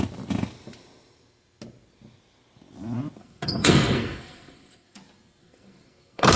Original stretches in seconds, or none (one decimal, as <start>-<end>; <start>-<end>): 0.0-3.2; 5.0-5.4